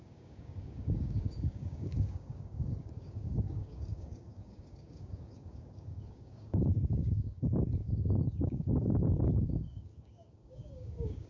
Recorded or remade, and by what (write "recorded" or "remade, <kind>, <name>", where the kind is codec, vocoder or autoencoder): remade, codec, DAC